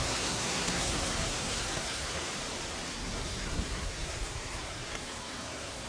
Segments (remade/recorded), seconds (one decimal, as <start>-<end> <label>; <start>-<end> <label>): 0.0-2.3 remade; 2.3-2.9 recorded; 2.9-5.9 remade